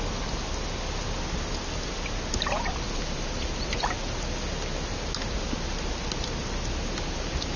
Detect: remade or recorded recorded